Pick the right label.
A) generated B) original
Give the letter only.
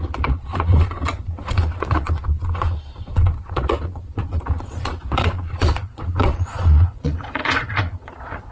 A